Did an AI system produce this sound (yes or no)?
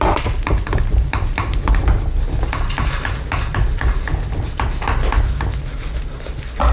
no